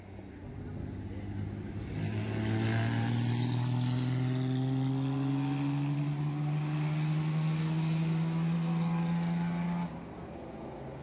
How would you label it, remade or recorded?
recorded